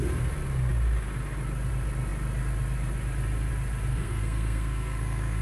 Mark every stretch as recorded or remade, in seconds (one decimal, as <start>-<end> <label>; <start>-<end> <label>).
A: 0.0-3.9 recorded; 3.9-5.4 remade